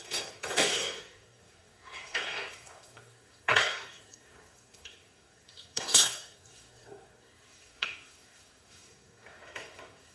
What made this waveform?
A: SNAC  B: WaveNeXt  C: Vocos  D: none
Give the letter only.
A